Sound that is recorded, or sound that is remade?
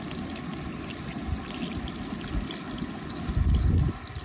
recorded